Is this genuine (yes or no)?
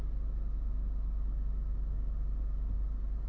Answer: yes